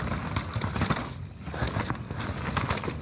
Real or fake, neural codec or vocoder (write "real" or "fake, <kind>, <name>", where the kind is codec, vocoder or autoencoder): real